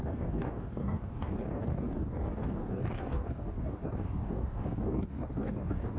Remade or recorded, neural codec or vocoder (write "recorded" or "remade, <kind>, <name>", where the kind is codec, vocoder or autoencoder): remade, codec, DAC